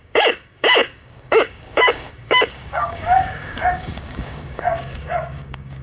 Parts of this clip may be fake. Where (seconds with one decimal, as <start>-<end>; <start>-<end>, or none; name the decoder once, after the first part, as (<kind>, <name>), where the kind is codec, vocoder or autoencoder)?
0.0-5.8 (codec, DAC)